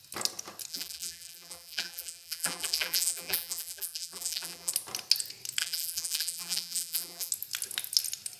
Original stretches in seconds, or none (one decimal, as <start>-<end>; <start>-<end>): 0.0-0.7; 4.7-5.6; 7.3-8.4